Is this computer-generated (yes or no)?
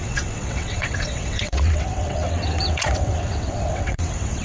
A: yes